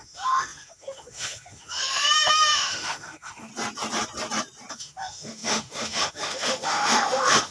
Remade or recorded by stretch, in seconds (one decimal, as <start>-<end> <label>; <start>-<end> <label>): 0.0-3.5 remade; 3.5-4.7 recorded; 4.7-7.5 remade